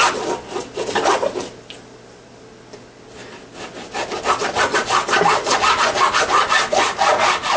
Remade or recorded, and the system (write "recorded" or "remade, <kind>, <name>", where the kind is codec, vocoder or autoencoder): recorded